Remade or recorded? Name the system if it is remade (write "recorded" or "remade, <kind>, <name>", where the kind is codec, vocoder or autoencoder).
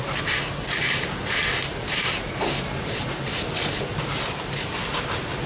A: recorded